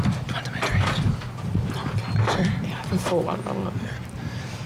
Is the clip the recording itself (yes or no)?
yes